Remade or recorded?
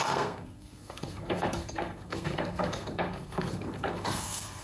remade